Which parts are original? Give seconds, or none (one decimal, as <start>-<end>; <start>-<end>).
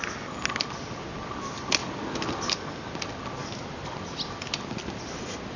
0.0-5.6